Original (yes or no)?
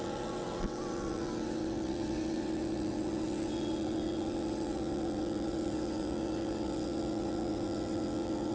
no